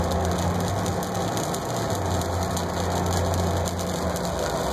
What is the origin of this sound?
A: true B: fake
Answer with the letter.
A